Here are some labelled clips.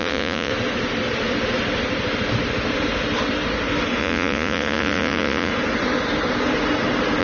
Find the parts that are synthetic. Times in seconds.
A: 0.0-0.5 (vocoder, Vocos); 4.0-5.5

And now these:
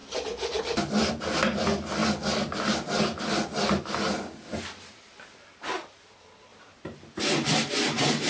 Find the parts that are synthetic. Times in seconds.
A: none

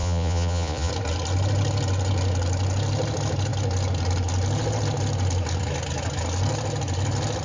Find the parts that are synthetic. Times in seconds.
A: 0.0-0.9 (vocoder, Vocos)